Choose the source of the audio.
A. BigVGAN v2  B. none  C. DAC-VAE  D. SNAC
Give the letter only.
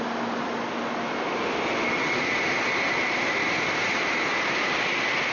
B